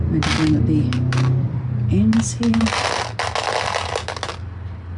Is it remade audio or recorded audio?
recorded